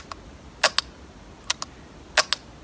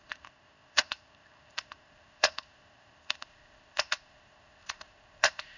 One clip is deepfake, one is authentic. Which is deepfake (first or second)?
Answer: second